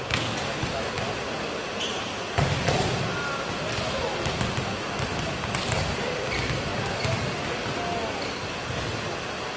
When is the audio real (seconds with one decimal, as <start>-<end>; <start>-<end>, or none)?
0.0-9.6